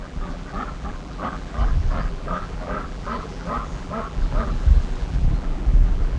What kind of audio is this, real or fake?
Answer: fake